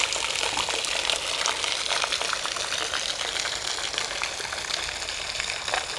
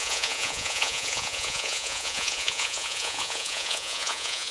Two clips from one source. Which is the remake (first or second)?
second